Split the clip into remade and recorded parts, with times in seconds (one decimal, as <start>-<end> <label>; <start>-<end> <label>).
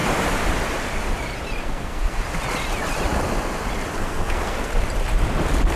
0.0-1.6 recorded; 1.6-2.2 remade; 2.2-4.0 recorded; 4.0-4.7 remade; 4.7-5.8 recorded